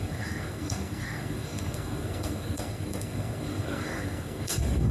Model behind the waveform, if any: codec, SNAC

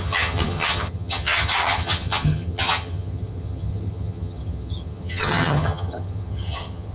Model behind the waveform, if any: vocoder, HiFi-GAN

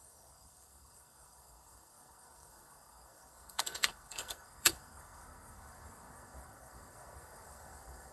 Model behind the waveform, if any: codec, SNAC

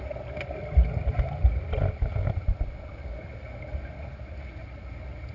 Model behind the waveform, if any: none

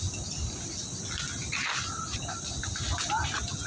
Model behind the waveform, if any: none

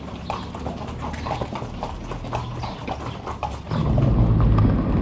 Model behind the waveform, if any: none